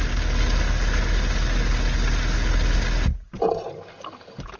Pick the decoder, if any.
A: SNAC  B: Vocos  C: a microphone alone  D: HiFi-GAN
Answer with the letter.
C